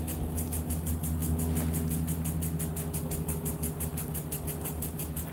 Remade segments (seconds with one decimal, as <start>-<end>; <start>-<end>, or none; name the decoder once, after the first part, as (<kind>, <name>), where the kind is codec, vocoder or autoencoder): none